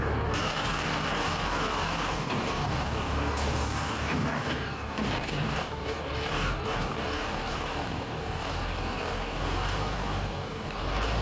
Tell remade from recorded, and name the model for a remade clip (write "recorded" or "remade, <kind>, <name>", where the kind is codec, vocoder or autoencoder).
remade, codec, DAC